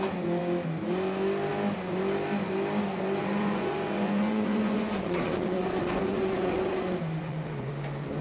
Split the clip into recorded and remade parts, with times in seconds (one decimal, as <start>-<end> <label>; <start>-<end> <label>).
0.0-3.2 recorded; 3.2-7.7 remade; 7.7-8.2 recorded